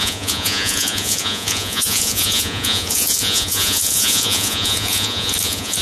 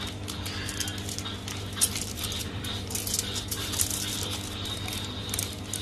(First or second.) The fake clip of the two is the first